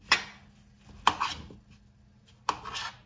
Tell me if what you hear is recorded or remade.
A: recorded